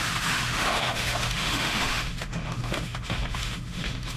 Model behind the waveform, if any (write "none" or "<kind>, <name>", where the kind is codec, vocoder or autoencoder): autoencoder, DAC-VAE